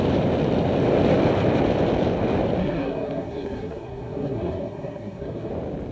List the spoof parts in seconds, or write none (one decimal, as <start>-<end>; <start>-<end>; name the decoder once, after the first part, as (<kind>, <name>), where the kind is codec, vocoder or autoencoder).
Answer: 2.6-5.5 (codec, SNAC)